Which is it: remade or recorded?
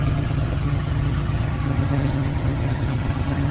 remade